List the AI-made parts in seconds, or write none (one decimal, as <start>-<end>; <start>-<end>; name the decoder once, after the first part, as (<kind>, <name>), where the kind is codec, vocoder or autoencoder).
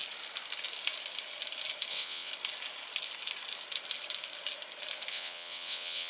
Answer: 1.9-2.3 (vocoder, WaveNeXt); 5.1-6.1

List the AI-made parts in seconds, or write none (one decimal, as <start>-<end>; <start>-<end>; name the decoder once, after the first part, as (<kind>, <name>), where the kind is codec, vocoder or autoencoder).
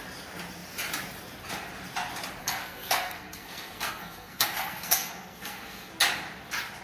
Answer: 2.4-5.9 (codec, SNAC)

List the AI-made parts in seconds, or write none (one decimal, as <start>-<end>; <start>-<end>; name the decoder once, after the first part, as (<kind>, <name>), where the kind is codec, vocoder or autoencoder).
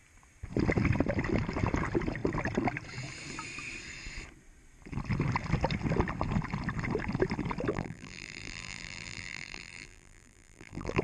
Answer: 7.7-11.0 (vocoder, BigVGAN v2)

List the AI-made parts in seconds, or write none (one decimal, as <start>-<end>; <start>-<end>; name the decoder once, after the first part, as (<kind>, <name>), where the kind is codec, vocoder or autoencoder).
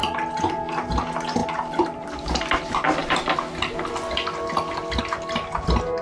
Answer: none